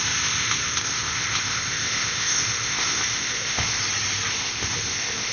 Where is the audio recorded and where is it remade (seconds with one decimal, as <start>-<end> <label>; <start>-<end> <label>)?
0.0-3.8 remade; 3.8-4.3 recorded; 4.3-5.3 remade